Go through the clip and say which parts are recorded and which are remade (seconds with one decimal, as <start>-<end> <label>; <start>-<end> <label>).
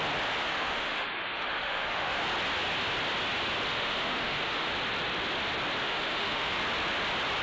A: 0.0-0.4 recorded; 0.4-2.2 remade; 2.2-3.7 recorded; 3.7-4.7 remade; 4.7-5.8 recorded; 5.8-6.6 remade; 6.6-7.4 recorded